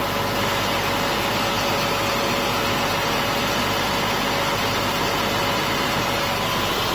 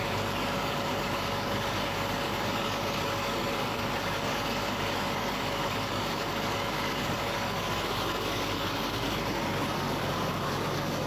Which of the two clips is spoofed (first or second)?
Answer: second